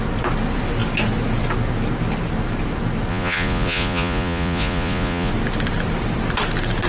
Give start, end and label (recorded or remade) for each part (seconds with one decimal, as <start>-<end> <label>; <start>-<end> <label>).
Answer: 0.0-3.1 recorded; 3.1-5.3 remade; 5.3-6.9 recorded